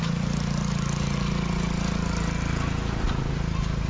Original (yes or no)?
yes